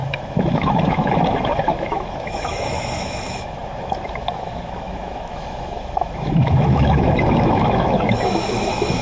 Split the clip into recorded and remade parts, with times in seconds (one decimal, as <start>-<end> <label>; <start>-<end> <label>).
0.0-9.0 remade